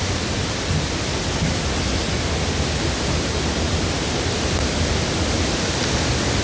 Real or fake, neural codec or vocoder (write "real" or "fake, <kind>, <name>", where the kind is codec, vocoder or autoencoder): real